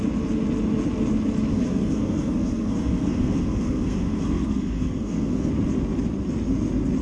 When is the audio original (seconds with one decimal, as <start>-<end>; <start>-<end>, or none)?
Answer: 0.0-1.5; 5.5-7.0